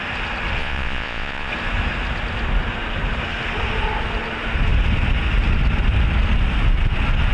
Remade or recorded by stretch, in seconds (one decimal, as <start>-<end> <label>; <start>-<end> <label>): 0.0-0.6 recorded; 0.6-1.5 remade; 1.5-7.3 recorded